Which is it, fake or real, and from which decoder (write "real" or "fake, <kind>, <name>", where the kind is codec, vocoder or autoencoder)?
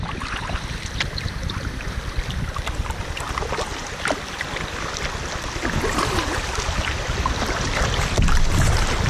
real